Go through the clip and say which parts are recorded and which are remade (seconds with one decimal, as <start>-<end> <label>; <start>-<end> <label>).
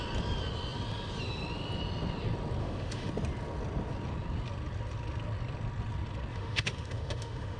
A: 0.0-2.6 recorded; 2.6-3.1 remade; 3.1-6.3 recorded; 6.3-7.6 remade